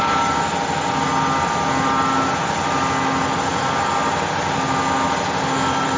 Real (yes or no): yes